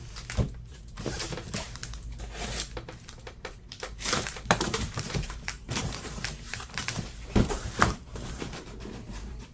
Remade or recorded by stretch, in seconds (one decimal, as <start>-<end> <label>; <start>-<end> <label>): 0.0-0.7 recorded; 0.7-1.8 remade; 1.8-2.4 recorded; 2.4-9.5 remade